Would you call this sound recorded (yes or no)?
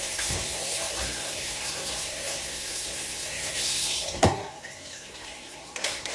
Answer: no